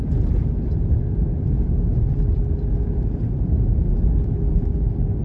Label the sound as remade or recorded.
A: recorded